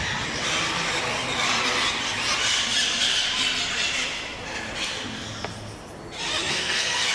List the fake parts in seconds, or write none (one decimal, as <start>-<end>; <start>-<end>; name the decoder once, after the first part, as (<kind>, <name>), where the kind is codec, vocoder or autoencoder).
6.4-7.1 (codec, SNAC)